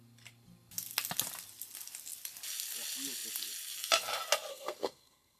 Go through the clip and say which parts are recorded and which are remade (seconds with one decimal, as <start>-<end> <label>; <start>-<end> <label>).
0.0-4.5 recorded; 4.5-5.4 remade